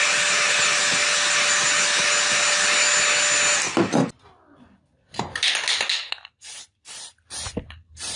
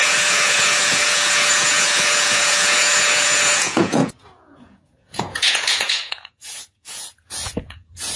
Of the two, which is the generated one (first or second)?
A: second